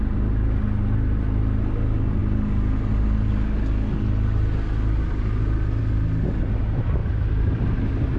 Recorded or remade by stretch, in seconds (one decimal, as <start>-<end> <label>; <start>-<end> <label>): 0.0-7.0 recorded; 7.0-7.7 remade; 7.7-8.2 recorded